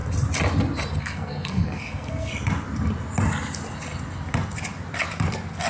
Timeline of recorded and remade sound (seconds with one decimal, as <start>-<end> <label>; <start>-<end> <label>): 0.0-1.0 recorded; 1.0-2.3 remade; 2.3-5.7 recorded